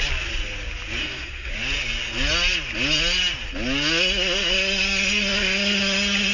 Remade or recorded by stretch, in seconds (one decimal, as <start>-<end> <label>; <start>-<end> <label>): 0.0-1.0 recorded; 1.0-1.5 remade; 1.5-6.3 recorded